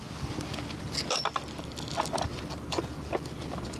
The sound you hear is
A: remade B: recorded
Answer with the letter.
B